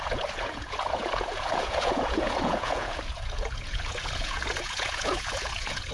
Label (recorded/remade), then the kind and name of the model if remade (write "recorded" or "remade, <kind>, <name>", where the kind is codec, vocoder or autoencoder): remade, vocoder, Vocos